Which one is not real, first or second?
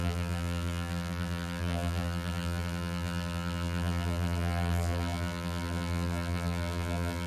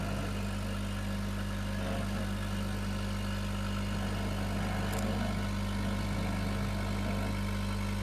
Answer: first